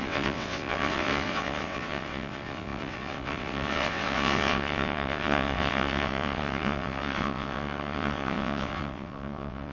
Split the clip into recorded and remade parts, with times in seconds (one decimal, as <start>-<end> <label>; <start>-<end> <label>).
0.0-9.7 remade

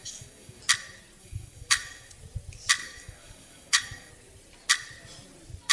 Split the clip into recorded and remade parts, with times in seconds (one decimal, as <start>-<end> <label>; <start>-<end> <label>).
0.0-0.6 remade; 0.6-1.2 recorded; 1.2-2.1 remade; 2.1-2.8 recorded; 2.8-4.1 remade; 4.1-5.7 recorded

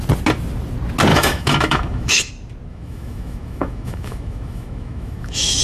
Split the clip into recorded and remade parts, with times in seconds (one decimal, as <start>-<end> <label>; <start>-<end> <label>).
0.0-1.1 recorded; 1.1-2.3 remade; 2.3-2.7 recorded; 2.7-5.6 remade

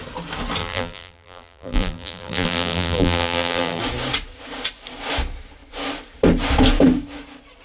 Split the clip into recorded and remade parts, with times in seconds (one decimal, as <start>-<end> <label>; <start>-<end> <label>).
0.0-0.6 recorded; 0.6-3.8 remade; 3.8-7.6 recorded

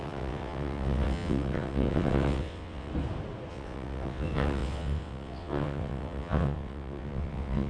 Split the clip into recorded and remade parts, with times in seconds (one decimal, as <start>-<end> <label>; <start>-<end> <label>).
0.0-2.9 remade; 2.9-3.5 recorded; 3.5-7.7 remade

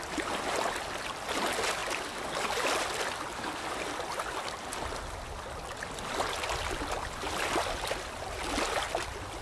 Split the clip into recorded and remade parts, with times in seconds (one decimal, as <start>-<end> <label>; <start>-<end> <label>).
0.0-9.4 recorded

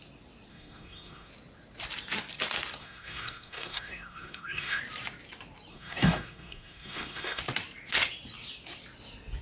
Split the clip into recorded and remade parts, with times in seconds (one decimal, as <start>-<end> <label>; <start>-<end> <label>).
0.0-0.5 recorded; 0.5-1.3 remade; 1.3-2.8 recorded; 2.8-4.8 remade; 4.8-5.7 recorded; 5.7-7.4 remade; 7.4-9.4 recorded